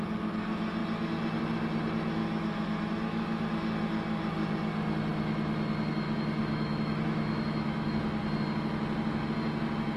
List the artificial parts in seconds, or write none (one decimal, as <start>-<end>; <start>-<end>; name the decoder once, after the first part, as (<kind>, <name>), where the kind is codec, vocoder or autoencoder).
2.2-3.4 (autoencoder, DAC-VAE); 6.4-7.9